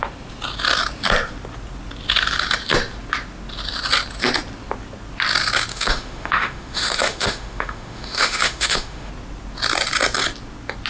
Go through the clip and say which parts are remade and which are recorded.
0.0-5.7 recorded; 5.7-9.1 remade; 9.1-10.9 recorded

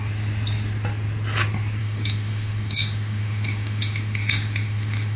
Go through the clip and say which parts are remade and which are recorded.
0.0-1.8 recorded; 1.8-5.2 remade